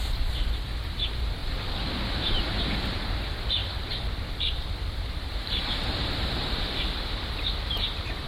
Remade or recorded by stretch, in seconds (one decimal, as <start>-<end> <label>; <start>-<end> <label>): 0.0-8.3 remade